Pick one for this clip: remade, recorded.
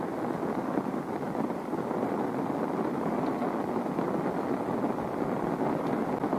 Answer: recorded